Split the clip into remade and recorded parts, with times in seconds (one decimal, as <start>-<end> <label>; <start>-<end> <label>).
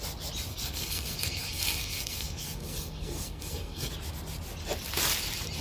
0.0-0.5 recorded; 0.5-3.9 remade; 3.9-5.6 recorded